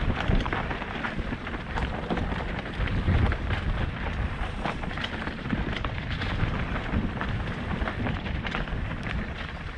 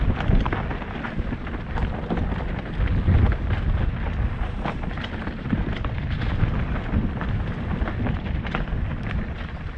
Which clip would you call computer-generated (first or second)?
first